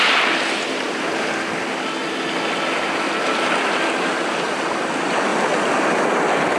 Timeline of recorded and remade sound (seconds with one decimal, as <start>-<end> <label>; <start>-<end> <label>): 0.0-6.6 recorded